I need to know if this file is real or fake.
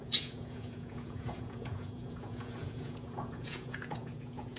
fake